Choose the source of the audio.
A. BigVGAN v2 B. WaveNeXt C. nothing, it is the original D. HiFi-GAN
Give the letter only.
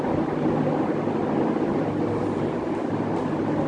C